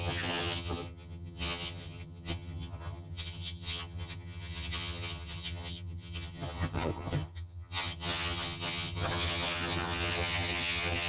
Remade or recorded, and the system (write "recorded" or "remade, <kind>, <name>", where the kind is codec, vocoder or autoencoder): remade, vocoder, HiFi-GAN